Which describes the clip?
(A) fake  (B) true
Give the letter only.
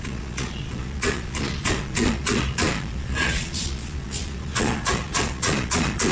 A